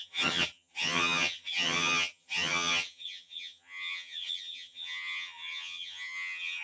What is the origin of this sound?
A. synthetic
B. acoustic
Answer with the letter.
A